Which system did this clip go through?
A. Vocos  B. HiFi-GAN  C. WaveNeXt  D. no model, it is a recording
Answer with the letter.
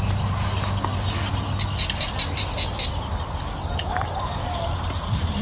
D